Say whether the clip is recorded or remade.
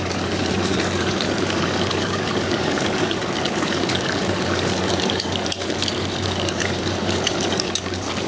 remade